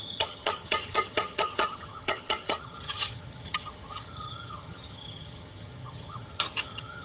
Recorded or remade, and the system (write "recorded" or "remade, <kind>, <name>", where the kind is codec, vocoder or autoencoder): remade, vocoder, HiFi-GAN